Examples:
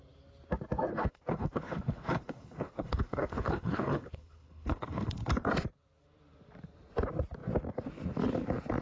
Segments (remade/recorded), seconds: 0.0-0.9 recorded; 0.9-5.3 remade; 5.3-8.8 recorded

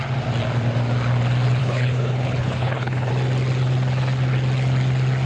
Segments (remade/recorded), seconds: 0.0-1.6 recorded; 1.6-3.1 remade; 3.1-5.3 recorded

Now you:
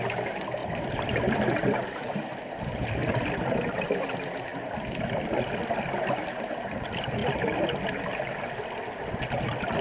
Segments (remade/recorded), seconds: 0.0-0.6 recorded; 0.6-2.3 remade; 2.3-7.2 recorded; 7.2-7.8 remade; 7.8-9.8 recorded

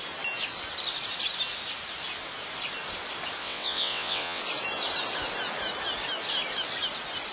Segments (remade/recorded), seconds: 0.0-3.4 recorded; 3.4-4.4 remade; 4.4-7.3 recorded